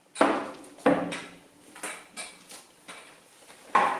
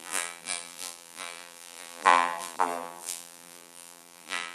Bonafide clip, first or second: first